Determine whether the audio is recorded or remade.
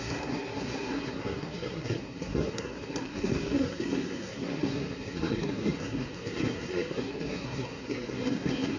remade